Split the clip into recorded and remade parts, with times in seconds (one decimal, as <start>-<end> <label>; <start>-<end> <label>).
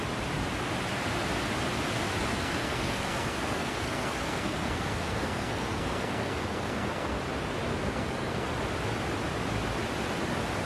0.0-2.2 recorded; 2.2-7.2 remade; 7.2-7.7 recorded; 7.7-8.5 remade; 8.5-10.7 recorded